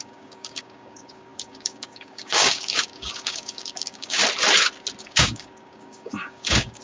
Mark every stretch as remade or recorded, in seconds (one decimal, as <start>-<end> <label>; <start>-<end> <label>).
0.0-4.2 remade; 4.2-5.0 recorded; 5.0-6.8 remade